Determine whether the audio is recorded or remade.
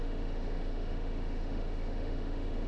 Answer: remade